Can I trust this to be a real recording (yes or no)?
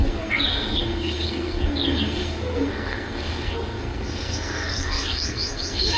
no